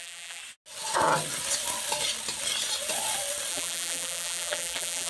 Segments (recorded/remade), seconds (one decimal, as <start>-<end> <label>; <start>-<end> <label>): 0.0-0.4 remade; 0.4-3.5 recorded; 3.5-5.1 remade